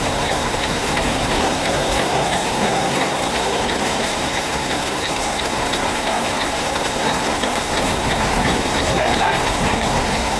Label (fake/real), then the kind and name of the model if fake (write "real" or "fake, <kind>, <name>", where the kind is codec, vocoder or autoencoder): fake, codec, SNAC